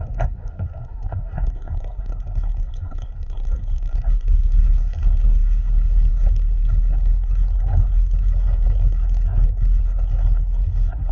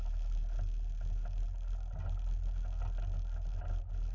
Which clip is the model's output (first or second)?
first